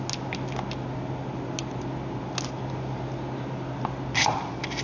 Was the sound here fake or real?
real